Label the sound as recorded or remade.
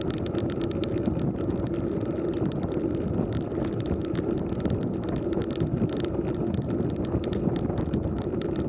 recorded